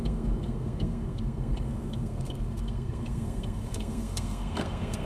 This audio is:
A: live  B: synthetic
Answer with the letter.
B